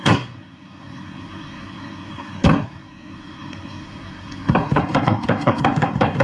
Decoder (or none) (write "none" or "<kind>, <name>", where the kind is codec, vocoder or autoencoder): codec, SNAC